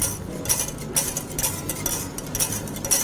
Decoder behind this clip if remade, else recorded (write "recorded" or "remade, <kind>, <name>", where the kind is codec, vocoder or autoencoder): recorded